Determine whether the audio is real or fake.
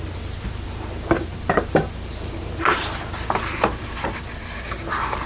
real